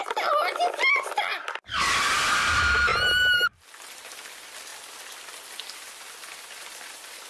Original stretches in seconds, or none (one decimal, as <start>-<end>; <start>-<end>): 2.9-3.8; 4.7-5.6